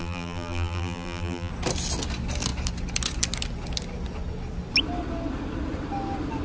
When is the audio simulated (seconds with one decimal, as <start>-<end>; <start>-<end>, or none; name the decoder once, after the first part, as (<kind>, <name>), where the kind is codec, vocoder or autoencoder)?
0.0-1.5 (vocoder, BigVGAN v2)